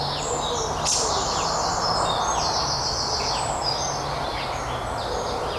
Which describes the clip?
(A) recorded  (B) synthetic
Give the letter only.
A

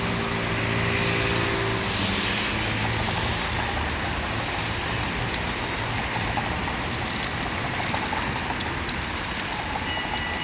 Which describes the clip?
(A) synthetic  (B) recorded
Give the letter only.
B